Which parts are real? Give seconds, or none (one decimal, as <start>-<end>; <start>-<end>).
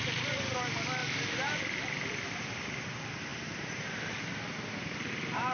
1.0-1.8